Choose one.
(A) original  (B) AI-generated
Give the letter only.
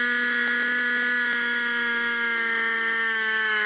B